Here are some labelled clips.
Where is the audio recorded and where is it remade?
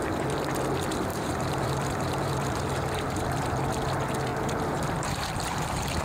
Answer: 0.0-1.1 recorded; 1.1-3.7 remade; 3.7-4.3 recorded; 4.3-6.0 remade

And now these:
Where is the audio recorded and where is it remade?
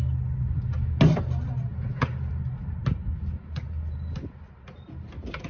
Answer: 0.0-5.5 recorded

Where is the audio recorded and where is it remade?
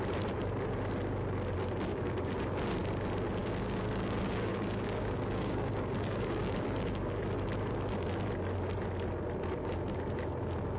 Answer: 0.0-1.9 recorded; 1.9-2.4 remade; 2.4-3.4 recorded; 3.4-7.2 remade; 7.2-10.8 recorded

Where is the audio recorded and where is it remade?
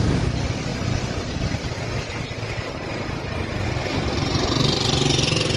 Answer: 0.0-5.6 recorded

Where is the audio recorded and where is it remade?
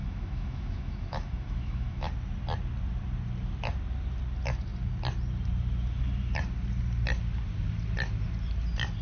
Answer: 0.0-2.1 remade; 2.1-9.0 recorded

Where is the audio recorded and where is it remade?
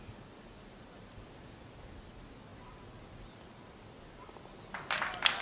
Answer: 0.0-5.4 recorded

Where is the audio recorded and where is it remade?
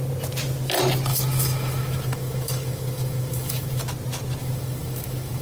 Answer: 0.0-1.1 recorded; 1.1-3.8 remade; 3.8-4.4 recorded; 4.4-5.4 remade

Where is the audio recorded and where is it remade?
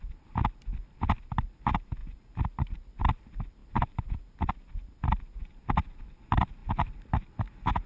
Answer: 0.0-3.6 recorded; 3.6-4.5 remade; 4.5-7.9 recorded